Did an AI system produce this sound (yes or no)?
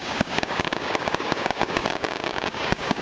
yes